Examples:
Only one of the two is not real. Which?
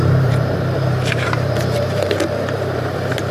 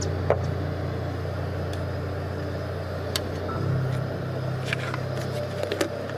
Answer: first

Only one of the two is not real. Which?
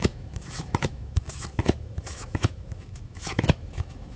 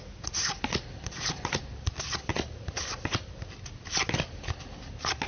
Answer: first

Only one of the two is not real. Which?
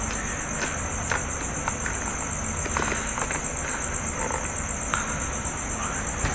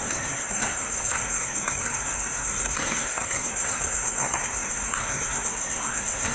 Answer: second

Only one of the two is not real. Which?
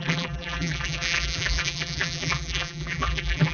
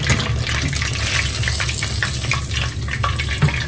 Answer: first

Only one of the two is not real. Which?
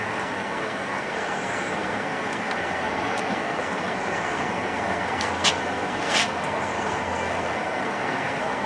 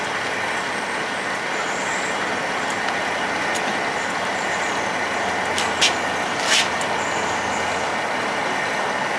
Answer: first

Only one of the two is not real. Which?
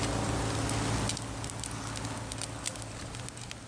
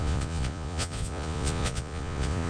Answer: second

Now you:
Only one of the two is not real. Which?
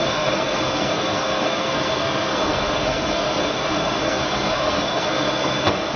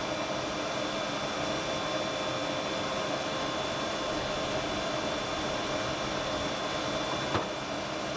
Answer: first